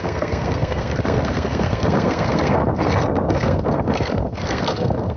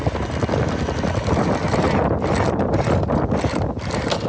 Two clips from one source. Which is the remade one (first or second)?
first